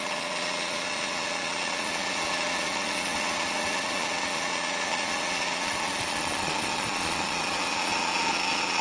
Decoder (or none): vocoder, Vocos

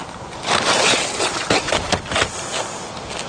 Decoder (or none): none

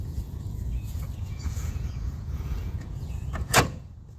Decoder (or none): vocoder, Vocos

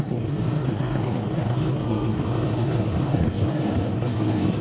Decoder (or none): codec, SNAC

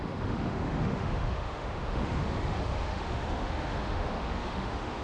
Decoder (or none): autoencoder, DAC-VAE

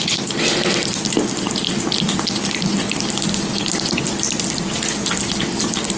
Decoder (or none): none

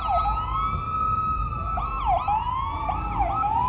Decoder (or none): none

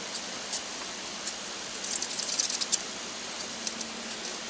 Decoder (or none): none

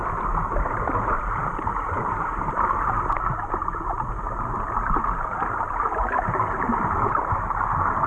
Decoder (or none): none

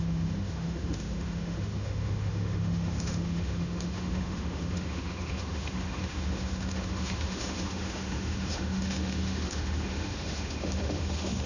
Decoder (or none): autoencoder, DAC-VAE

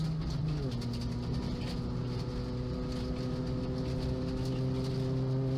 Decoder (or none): none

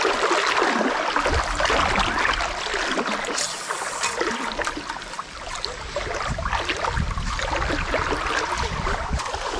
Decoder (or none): none